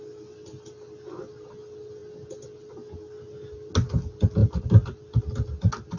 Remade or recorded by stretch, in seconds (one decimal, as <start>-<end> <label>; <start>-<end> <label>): 0.0-6.0 recorded